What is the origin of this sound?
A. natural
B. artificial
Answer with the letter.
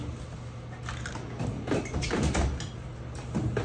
A